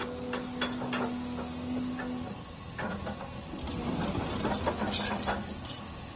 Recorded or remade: recorded